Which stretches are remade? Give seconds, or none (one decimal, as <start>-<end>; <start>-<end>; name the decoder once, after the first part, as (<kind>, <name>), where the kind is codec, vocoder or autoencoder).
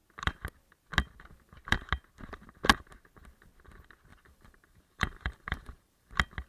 4.1-6.1 (vocoder, BigVGAN v2)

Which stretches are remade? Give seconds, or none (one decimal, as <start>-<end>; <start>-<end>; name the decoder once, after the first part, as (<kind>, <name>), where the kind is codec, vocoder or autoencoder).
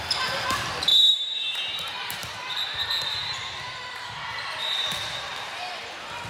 0.0-5.3 (vocoder, BigVGAN v2)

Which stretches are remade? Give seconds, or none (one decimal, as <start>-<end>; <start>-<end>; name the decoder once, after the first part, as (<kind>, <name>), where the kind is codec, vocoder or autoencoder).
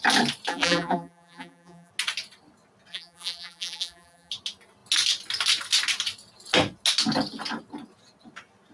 0.5-1.9 (vocoder, BigVGAN v2); 2.9-4.3